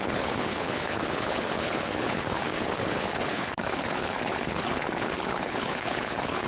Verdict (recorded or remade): remade